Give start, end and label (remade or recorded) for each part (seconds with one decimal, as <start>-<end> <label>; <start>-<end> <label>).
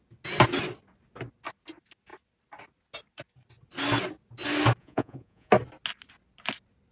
0.0-4.8 recorded; 4.8-5.5 remade; 5.5-6.9 recorded